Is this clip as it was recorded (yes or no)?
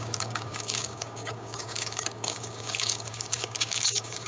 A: no